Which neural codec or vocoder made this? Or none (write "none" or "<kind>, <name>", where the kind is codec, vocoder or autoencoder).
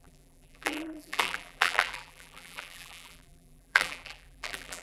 vocoder, BigVGAN v2